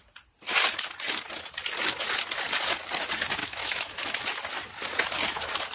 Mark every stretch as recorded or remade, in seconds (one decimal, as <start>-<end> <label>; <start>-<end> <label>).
0.0-3.4 recorded; 3.4-4.2 remade; 4.2-5.7 recorded